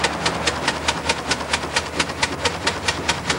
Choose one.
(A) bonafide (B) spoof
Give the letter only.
A